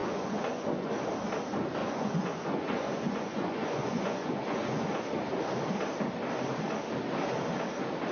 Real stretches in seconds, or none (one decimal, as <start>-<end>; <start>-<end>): 0.9-1.8; 5.0-8.1